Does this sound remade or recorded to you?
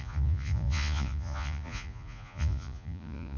remade